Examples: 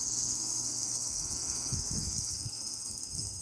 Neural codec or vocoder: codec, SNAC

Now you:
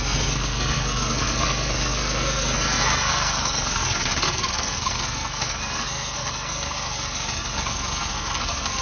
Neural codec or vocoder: codec, SNAC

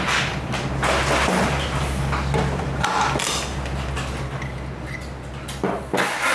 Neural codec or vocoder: none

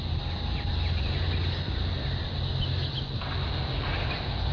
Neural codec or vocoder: none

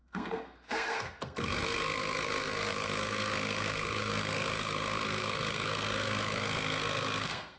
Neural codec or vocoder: codec, SNAC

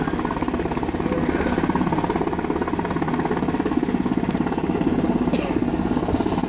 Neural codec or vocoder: none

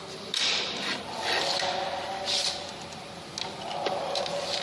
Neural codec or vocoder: none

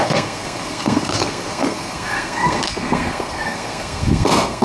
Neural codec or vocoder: codec, SNAC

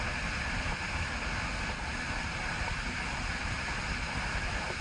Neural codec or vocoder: none